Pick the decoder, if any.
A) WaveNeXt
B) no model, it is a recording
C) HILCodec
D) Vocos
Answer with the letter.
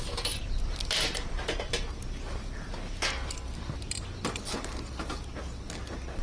B